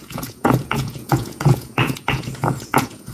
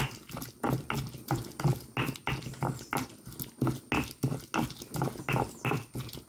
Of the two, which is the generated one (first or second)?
first